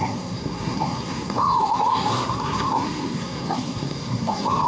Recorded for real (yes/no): no